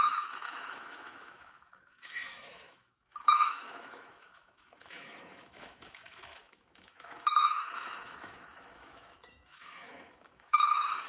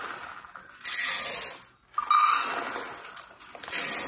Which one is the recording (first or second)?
second